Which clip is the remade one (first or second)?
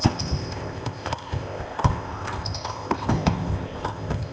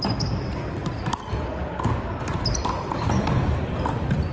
first